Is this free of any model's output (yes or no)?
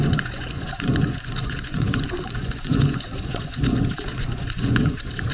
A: no